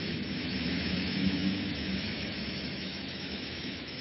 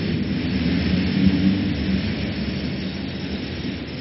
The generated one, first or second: first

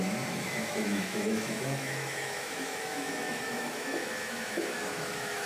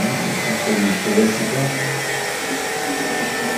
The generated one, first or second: first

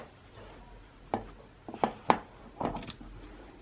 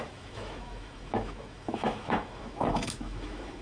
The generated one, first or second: second